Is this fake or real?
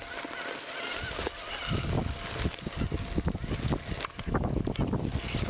real